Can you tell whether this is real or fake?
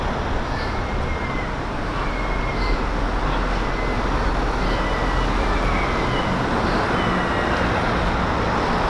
real